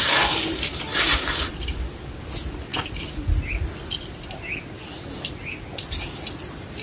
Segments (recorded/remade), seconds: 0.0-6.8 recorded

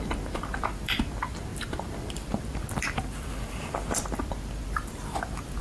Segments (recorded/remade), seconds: 0.0-5.6 remade

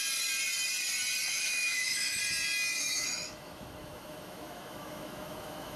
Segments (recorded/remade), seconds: 0.0-1.3 recorded; 1.3-2.2 remade; 2.2-2.8 recorded; 2.8-5.8 remade

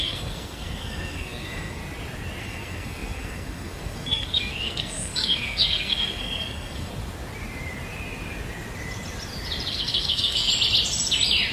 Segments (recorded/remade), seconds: 0.0-1.8 remade; 1.8-2.4 recorded; 2.4-6.9 remade; 6.9-9.7 recorded; 9.7-10.5 remade; 10.5-11.5 recorded

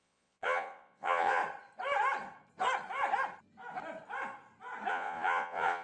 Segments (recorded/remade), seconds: 0.0-1.4 remade; 1.4-4.9 recorded; 4.9-5.8 remade

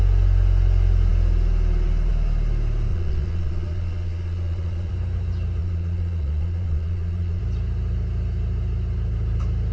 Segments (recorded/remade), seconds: 0.0-2.9 recorded; 2.9-4.9 remade; 4.9-5.6 recorded; 5.6-7.4 remade; 7.4-9.7 recorded